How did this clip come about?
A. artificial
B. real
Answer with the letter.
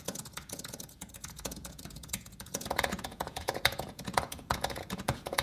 A